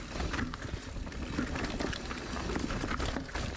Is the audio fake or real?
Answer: real